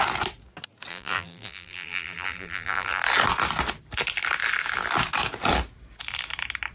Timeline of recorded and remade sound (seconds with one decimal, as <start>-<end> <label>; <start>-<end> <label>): 0.0-0.9 recorded; 0.9-3.0 remade; 3.0-6.7 recorded